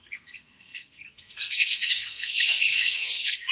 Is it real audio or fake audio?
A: fake